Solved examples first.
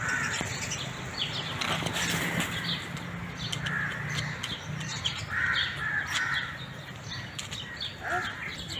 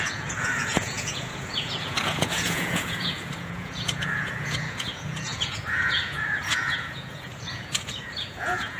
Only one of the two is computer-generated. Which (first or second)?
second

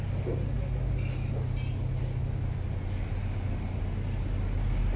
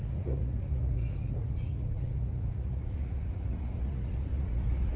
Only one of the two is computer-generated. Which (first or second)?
second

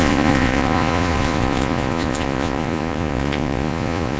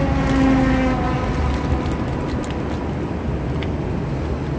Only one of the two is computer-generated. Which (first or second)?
first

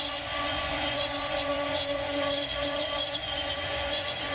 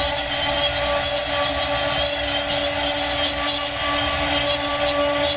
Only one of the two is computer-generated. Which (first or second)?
first